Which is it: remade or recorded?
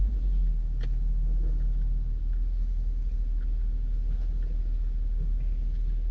recorded